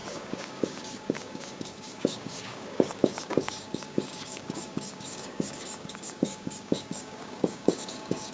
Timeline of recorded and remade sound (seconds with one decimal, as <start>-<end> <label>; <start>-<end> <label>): 0.0-8.3 remade